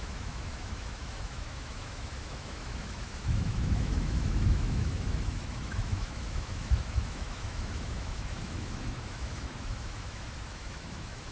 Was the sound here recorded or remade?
remade